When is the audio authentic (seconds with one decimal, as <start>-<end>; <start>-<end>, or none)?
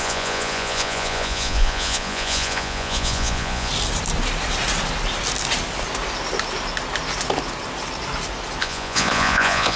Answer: 3.7-8.6